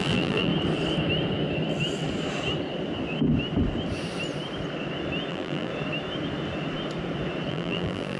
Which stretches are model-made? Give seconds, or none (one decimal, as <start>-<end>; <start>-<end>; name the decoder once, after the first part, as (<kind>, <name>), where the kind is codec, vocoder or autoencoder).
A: 0.0-0.5 (vocoder, BigVGAN v2); 5.3-5.7; 7.5-8.2